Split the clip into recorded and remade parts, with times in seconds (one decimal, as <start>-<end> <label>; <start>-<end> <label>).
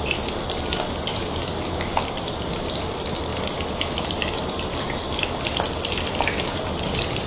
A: 0.0-1.1 recorded; 1.1-2.0 remade; 2.0-5.9 recorded; 5.9-7.3 remade